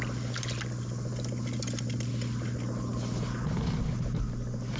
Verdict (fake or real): real